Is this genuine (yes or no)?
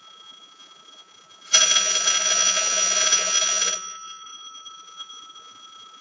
no